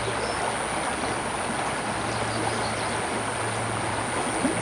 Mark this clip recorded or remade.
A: recorded